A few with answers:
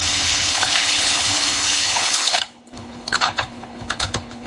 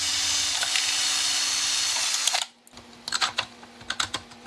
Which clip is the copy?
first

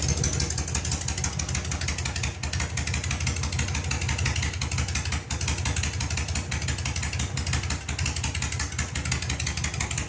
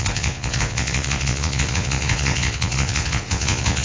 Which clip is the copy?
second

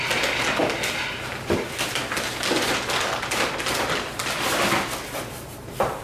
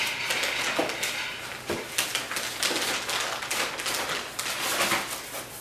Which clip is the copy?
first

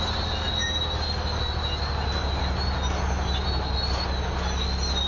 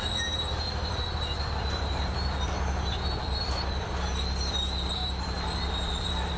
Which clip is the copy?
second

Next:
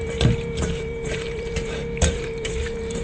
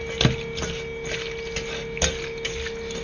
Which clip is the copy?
first